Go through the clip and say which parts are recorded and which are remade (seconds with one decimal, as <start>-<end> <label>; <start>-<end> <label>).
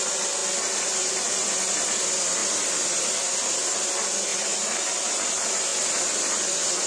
0.0-4.3 recorded; 4.3-5.1 remade; 5.1-6.9 recorded